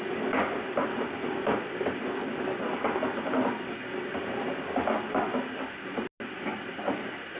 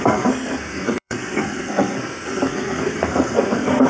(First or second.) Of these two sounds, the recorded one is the first